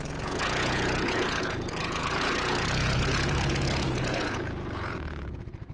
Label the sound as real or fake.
fake